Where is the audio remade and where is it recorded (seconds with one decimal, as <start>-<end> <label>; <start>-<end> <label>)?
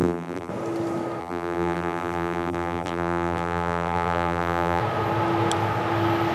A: 0.0-0.5 remade; 0.5-1.2 recorded; 1.2-4.8 remade; 4.8-6.3 recorded